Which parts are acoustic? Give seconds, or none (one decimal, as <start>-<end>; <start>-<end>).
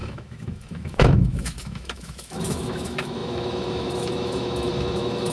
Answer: none